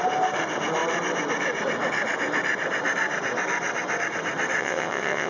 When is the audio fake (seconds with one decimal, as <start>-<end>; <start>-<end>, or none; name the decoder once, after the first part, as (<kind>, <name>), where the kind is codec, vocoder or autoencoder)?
4.6-5.3 (vocoder, WaveNeXt)